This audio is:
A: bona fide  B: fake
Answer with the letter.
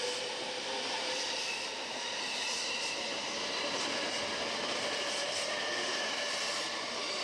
A